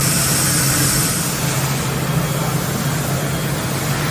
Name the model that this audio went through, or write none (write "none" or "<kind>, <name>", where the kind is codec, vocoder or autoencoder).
none